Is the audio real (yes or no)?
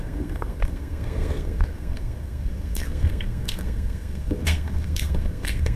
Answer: no